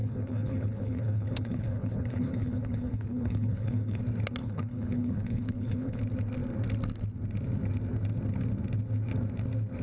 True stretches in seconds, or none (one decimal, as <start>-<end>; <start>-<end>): 4.0-4.4; 6.0-9.8